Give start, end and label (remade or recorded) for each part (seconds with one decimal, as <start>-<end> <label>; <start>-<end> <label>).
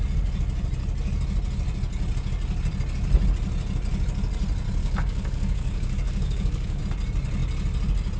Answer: 0.0-4.8 recorded; 4.8-6.8 remade; 6.8-8.2 recorded